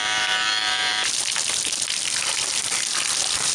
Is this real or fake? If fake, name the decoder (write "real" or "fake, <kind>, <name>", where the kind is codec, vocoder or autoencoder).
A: fake, vocoder, BigVGAN v2